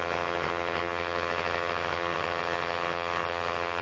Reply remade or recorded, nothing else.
remade